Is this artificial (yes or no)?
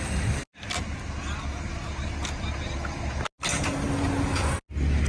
no